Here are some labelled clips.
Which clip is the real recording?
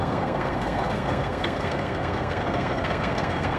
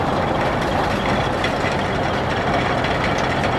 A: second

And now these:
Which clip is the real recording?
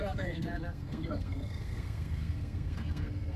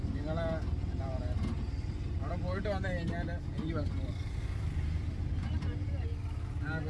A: second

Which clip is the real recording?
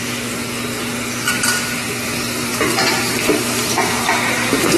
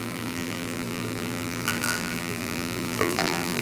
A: first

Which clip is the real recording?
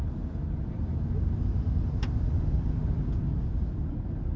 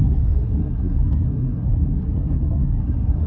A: first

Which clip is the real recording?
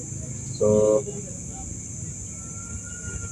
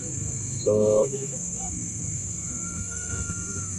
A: first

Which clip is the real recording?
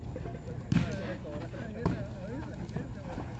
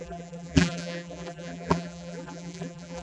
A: first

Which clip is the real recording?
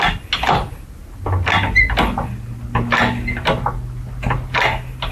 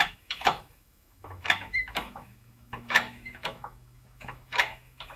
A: first